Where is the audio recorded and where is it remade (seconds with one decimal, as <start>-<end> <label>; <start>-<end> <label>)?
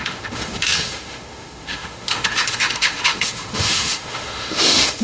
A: 0.0-5.0 remade